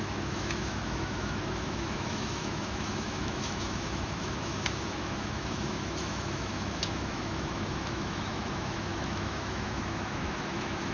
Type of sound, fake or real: fake